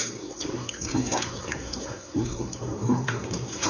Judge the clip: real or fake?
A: fake